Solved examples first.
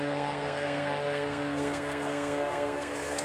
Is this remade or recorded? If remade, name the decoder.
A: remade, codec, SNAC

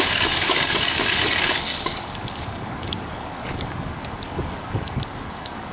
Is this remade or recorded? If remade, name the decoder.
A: remade, codec, DAC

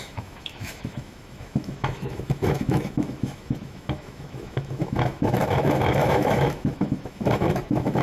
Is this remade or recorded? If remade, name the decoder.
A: remade, autoencoder, DAC-VAE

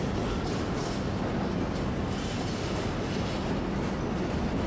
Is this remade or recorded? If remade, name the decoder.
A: recorded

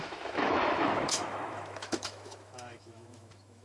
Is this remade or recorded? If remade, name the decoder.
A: remade, autoencoder, DAC-VAE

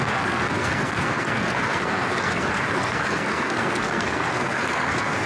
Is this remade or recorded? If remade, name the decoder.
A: remade, codec, SNAC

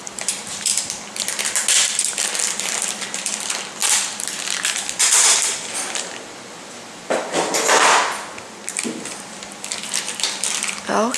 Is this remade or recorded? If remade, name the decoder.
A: recorded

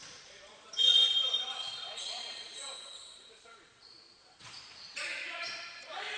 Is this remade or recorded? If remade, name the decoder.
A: remade, vocoder, Vocos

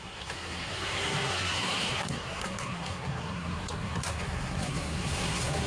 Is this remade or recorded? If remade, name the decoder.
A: remade, codec, SNAC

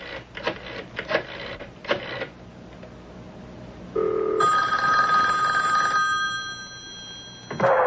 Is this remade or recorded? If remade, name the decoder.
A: recorded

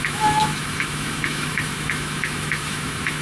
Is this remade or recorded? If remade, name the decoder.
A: remade, autoencoder, DAC-VAE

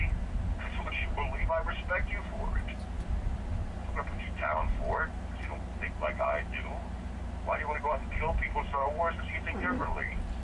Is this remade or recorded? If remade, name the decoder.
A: recorded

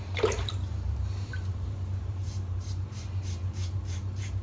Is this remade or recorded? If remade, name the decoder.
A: remade, vocoder, BigVGAN v2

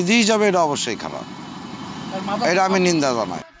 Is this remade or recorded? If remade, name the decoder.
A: recorded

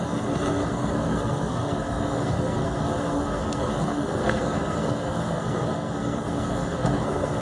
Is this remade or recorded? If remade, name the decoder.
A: remade, codec, SNAC